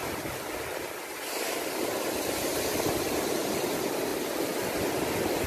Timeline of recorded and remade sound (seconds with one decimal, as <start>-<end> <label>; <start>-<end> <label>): 0.0-3.3 remade; 3.3-4.1 recorded; 4.1-5.5 remade